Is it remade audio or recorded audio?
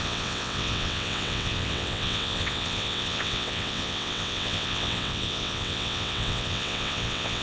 remade